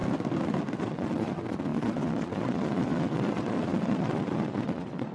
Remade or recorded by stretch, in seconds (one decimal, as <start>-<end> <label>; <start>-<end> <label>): 0.0-0.8 recorded; 0.8-5.1 remade